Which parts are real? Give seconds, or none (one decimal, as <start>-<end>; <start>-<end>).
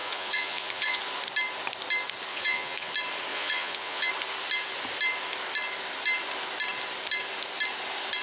1.0-2.3; 2.9-3.3; 4.1-8.2